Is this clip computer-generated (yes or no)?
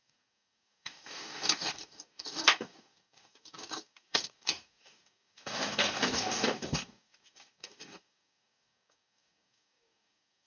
yes